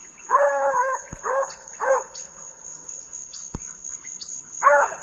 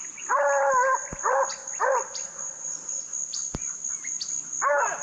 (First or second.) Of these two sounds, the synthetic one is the first